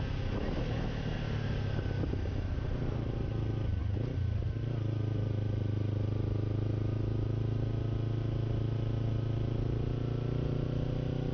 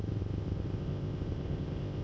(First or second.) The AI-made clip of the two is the second